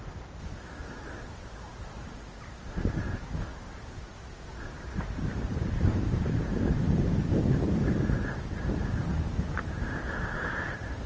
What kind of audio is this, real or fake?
fake